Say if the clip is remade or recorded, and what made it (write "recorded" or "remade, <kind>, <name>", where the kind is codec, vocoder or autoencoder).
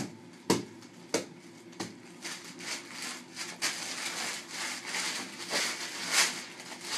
recorded